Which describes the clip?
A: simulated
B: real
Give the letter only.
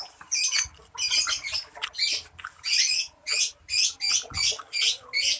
B